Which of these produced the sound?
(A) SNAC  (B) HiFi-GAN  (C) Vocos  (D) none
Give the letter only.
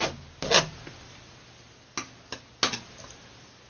D